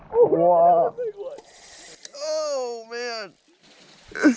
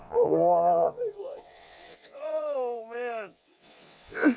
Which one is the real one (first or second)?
first